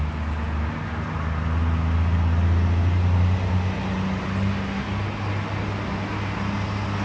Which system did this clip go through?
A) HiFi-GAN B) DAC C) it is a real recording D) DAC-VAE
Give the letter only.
C